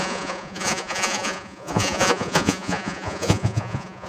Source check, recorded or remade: remade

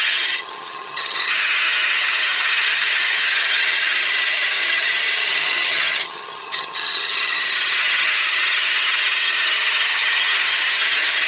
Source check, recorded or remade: remade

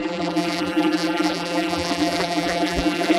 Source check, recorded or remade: remade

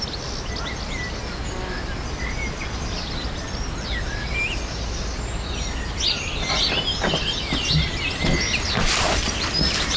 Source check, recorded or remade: recorded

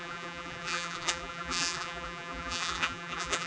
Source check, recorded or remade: remade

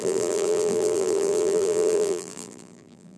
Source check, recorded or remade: remade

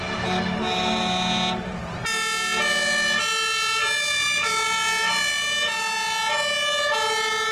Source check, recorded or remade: recorded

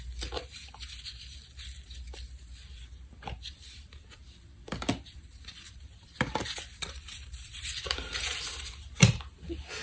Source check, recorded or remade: recorded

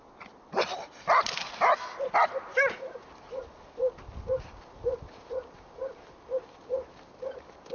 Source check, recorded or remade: recorded